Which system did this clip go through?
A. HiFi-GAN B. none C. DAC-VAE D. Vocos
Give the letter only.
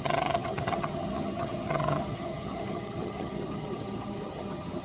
A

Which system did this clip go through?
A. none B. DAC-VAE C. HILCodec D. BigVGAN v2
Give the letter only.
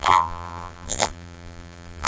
D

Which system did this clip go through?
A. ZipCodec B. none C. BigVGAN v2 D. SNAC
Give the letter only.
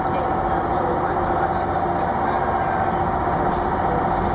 B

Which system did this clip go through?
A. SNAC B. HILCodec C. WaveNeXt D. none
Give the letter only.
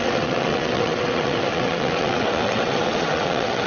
C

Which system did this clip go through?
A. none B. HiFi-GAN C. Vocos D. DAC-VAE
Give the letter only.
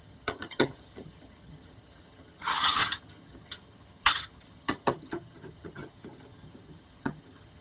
B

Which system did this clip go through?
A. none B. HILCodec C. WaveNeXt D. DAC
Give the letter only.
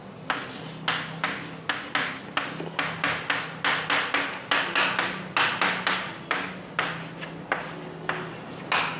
A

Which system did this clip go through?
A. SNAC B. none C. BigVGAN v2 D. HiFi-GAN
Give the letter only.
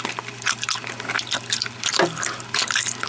C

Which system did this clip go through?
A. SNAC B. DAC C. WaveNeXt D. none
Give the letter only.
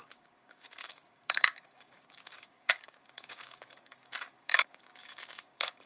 B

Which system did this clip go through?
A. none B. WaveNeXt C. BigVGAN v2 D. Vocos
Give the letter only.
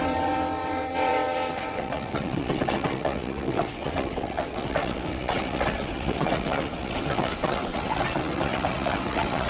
B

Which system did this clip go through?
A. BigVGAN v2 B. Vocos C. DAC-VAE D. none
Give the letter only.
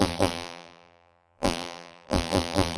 A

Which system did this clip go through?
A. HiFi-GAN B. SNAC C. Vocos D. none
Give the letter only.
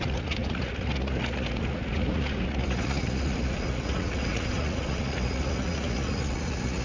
C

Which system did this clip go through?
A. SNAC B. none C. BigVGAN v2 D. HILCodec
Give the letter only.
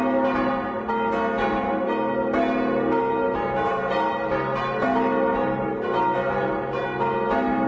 B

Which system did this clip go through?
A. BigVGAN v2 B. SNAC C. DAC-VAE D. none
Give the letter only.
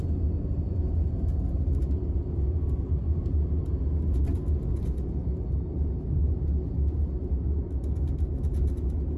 D